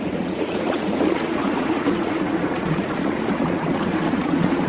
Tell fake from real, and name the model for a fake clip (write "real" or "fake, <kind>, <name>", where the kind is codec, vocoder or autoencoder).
fake, vocoder, Vocos